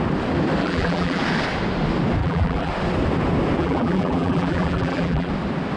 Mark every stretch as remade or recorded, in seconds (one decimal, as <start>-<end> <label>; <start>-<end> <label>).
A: 0.0-0.6 recorded; 0.6-1.2 remade; 1.2-2.2 recorded; 2.2-2.7 remade; 2.7-3.6 recorded; 3.6-5.3 remade; 5.3-5.8 recorded